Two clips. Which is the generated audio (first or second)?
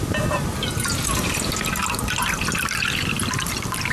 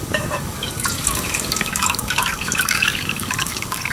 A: second